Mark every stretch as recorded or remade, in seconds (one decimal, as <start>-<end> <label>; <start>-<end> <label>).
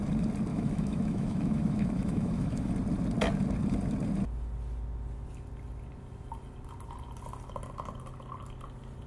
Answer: 0.0-0.5 recorded; 0.5-2.7 remade; 2.7-9.1 recorded